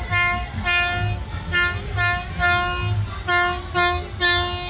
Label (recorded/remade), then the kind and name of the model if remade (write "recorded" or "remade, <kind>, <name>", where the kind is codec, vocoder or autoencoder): recorded